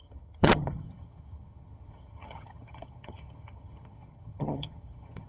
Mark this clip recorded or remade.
remade